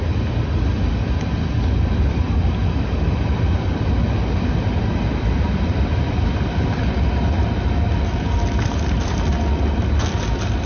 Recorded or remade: recorded